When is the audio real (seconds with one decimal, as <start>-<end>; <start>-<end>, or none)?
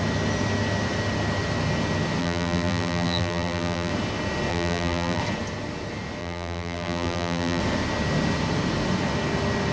0.0-2.2; 3.9-4.5; 5.2-6.2; 7.6-9.7